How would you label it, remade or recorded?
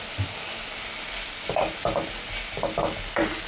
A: recorded